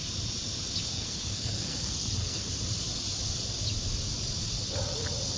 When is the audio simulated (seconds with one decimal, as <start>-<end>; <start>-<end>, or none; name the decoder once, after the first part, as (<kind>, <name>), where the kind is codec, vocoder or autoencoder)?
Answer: 0.9-2.5 (codec, SNAC)